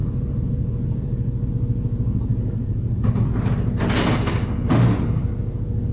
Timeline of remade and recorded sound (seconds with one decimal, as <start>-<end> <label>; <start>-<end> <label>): 0.0-1.5 remade; 1.5-2.3 recorded; 2.3-3.5 remade; 3.5-5.9 recorded

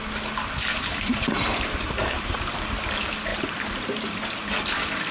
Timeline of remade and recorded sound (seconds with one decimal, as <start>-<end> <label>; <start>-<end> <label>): 0.0-0.7 recorded; 0.7-2.4 remade; 2.4-3.3 recorded; 3.3-4.3 remade; 4.3-5.1 recorded

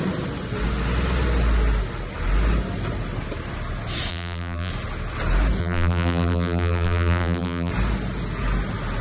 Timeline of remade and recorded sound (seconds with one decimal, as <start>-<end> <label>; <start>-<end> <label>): 0.0-4.1 recorded; 4.1-4.7 remade; 4.7-5.6 recorded; 5.6-7.7 remade; 7.7-9.0 recorded

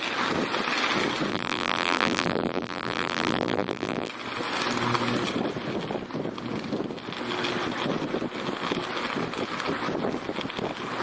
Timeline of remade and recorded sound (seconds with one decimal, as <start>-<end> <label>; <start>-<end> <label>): 0.0-1.3 recorded; 1.3-4.1 remade; 4.1-11.0 recorded

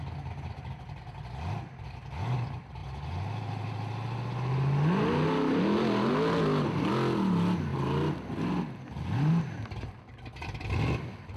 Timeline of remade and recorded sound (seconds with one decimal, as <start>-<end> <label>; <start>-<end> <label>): 0.0-11.4 recorded